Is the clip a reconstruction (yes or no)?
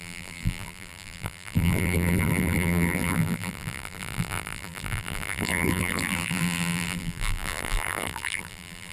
yes